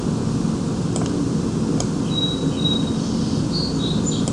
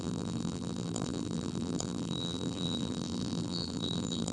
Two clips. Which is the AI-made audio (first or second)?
second